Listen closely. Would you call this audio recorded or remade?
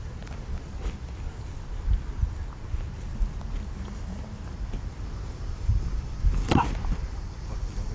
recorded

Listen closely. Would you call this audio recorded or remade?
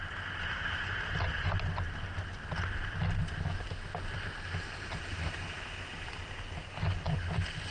recorded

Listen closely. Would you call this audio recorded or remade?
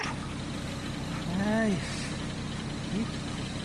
recorded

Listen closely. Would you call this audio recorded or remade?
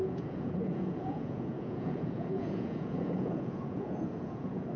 remade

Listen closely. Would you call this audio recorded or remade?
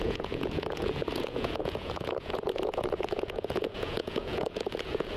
remade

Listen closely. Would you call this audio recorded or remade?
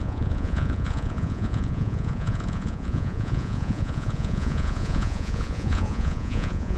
remade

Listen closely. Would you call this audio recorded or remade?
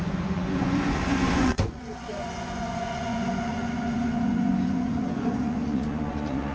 remade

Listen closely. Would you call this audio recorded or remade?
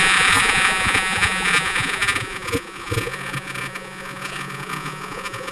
remade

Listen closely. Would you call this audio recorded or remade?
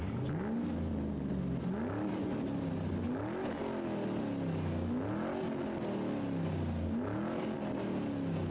recorded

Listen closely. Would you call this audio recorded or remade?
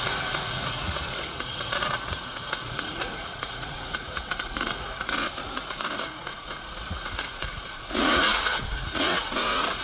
remade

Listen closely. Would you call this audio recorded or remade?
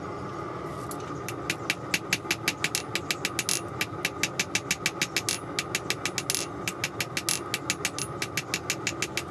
recorded